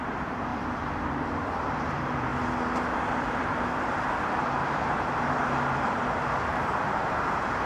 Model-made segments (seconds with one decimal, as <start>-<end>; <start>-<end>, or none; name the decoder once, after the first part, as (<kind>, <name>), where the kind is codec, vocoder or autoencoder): 0.0-0.5 (vocoder, BigVGAN v2); 1.1-2.3; 3.4-7.7

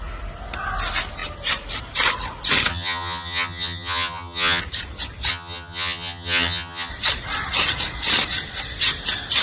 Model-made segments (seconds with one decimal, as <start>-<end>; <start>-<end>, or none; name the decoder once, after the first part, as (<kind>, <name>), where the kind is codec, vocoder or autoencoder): 2.7-4.6 (vocoder, HiFi-GAN); 5.3-6.9

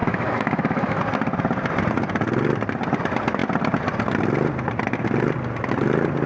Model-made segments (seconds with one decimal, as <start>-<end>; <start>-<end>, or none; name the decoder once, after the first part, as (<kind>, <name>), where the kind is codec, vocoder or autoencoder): 0.0-1.0 (autoencoder, DAC-VAE)

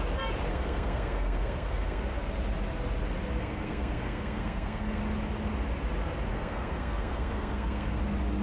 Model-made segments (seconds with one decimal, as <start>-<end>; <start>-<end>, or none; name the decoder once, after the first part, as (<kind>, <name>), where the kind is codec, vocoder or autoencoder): 0.5-2.0 (codec, SNAC); 3.4-5.0; 6.3-8.0